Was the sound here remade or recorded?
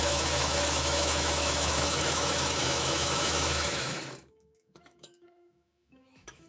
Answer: remade